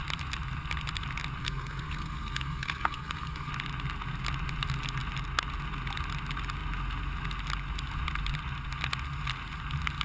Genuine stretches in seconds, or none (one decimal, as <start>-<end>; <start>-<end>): 0.0-1.4; 3.5-10.0